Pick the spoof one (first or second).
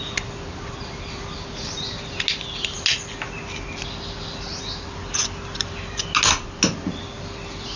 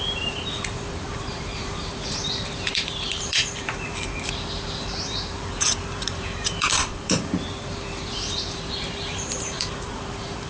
second